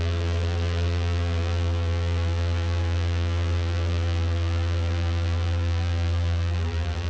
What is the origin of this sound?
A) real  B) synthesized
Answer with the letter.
B